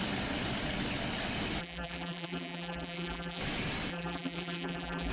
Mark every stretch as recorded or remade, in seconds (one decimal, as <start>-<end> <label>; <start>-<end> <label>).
0.0-1.6 recorded; 1.6-3.4 remade; 3.4-3.9 recorded; 3.9-5.1 remade